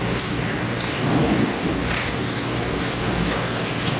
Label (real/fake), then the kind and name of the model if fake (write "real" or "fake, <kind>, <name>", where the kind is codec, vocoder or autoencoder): fake, codec, DAC